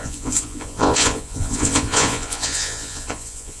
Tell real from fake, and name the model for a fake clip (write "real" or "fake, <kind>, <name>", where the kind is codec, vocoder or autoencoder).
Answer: fake, vocoder, Vocos